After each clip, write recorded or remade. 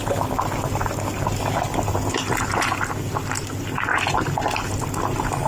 recorded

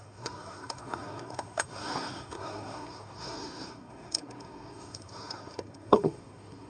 remade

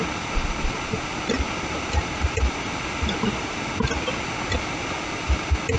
recorded